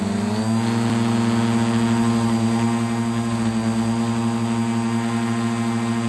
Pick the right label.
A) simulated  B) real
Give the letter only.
B